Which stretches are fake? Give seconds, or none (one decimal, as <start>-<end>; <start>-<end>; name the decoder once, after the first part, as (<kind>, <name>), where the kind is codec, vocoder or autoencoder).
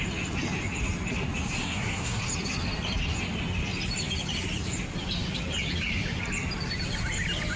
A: 1.6-2.2 (codec, SNAC)